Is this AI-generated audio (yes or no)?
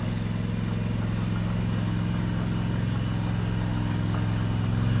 no